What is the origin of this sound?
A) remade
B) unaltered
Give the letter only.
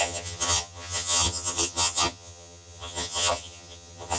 A